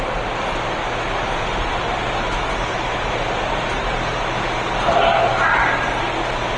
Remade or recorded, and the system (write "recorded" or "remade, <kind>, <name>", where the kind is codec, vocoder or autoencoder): recorded